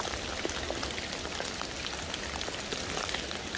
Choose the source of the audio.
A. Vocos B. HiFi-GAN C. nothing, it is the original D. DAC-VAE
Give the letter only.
C